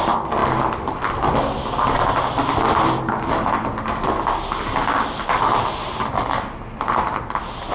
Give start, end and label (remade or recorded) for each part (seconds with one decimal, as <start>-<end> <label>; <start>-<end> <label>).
0.0-7.7 recorded